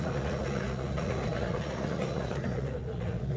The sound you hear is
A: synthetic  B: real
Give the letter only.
A